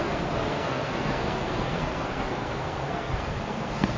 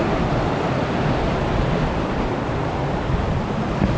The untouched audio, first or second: second